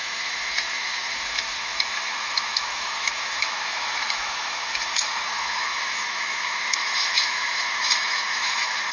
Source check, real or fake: fake